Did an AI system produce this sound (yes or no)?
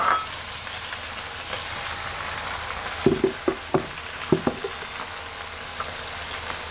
no